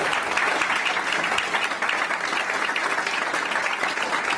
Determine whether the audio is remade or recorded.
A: recorded